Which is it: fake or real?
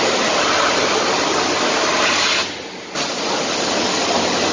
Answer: real